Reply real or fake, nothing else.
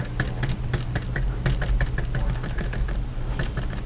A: real